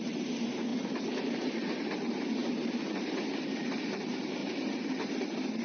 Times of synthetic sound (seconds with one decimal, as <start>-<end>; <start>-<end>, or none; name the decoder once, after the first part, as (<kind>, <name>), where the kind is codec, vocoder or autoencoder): 0.0-0.7 (vocoder, BigVGAN v2); 1.3-2.4; 3.6-4.4